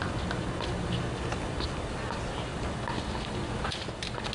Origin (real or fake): real